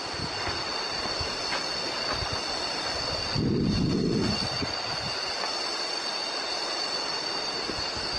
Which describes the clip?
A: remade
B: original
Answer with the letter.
B